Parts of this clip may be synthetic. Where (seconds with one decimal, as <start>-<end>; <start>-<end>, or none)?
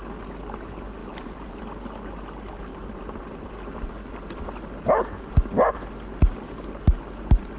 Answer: 1.0-1.6